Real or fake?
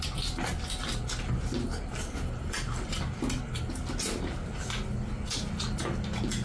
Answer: real